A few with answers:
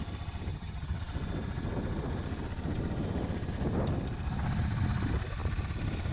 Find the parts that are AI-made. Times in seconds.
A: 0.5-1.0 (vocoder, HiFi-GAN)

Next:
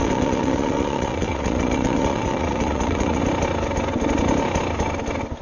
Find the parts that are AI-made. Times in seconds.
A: 0.0-3.2 (vocoder, WaveNeXt)

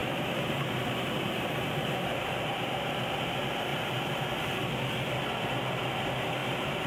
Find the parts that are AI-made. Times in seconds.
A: 0.0-3.0 (vocoder, BigVGAN v2); 3.7-4.3

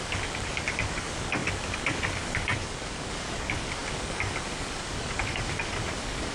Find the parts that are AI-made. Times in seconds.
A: 0.0-6.3 (codec, DAC)

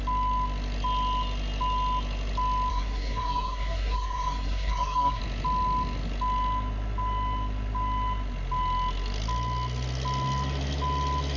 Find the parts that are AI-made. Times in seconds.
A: 2.7-5.2 (codec, SNAC)